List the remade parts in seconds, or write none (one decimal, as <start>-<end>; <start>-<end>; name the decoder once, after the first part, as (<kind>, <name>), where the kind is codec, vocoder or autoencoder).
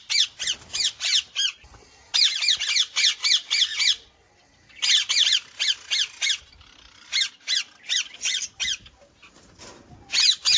none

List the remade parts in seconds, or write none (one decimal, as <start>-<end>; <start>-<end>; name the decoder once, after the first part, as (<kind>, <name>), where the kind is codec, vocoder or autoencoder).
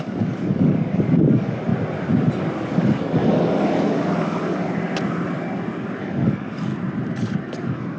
0.0-1.7 (codec, DAC); 2.7-4.9; 6.0-6.7; 7.4-8.0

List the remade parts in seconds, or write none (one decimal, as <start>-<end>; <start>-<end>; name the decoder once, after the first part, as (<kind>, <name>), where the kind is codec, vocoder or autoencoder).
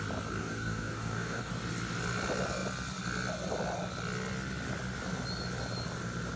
0.4-1.5 (codec, DAC)